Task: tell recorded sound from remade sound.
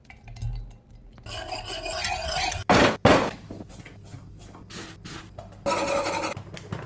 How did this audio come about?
recorded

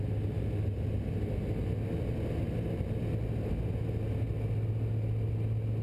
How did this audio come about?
recorded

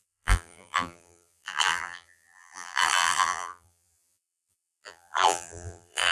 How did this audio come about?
remade